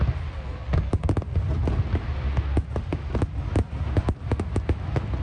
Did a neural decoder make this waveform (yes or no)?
no